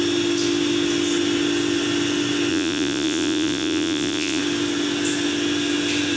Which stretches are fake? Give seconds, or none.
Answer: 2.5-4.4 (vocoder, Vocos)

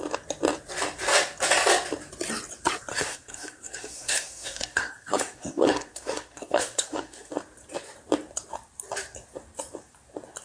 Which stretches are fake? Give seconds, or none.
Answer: 2.9-7.3 (codec, SNAC)

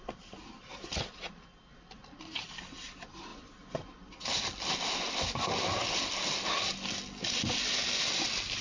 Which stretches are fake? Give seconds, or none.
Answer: none

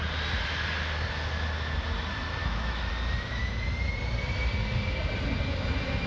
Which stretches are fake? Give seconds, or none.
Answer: 2.4-2.9 (autoencoder, DAC-VAE)